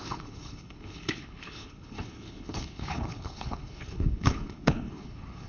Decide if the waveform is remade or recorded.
remade